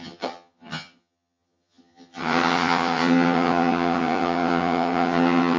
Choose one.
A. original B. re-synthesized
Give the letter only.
B